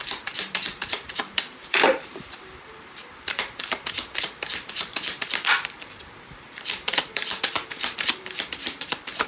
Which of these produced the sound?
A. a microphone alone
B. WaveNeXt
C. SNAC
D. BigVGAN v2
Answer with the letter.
D